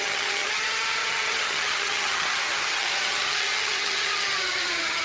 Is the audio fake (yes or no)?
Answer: yes